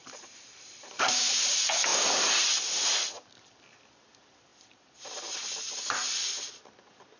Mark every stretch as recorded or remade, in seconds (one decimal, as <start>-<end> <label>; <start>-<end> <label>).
0.0-1.2 remade; 1.2-7.2 recorded